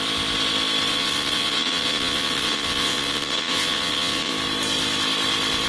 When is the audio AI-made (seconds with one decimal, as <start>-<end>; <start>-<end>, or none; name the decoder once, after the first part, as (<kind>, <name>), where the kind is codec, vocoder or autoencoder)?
0.9-4.3 (vocoder, WaveNeXt)